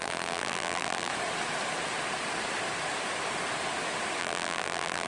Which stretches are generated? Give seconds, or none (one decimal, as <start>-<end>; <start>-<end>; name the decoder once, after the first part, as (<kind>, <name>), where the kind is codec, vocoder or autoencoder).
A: 0.0-1.1 (vocoder, BigVGAN v2); 4.2-5.1